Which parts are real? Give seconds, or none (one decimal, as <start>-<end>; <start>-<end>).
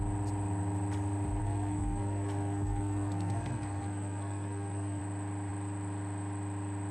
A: 0.0-1.4; 5.0-6.9